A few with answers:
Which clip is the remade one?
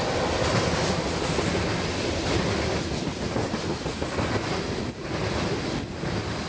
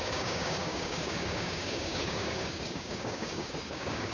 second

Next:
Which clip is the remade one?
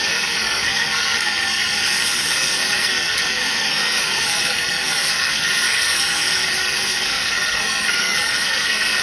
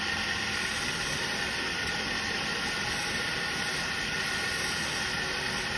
first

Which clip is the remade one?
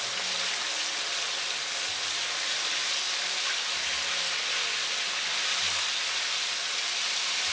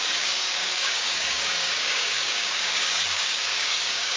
second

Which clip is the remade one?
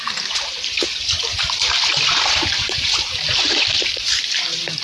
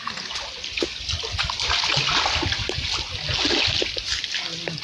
first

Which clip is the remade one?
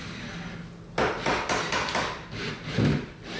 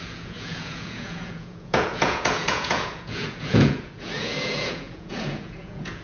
second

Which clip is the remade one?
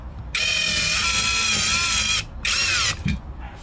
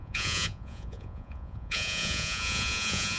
second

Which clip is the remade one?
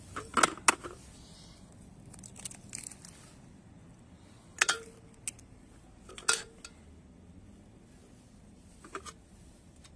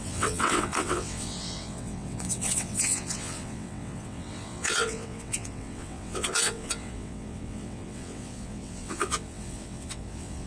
second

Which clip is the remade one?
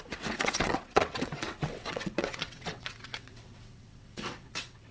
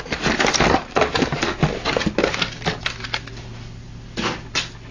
first